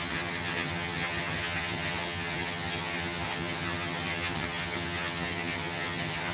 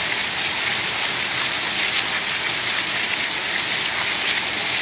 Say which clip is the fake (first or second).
first